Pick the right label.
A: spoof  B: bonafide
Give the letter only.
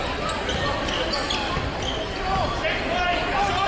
B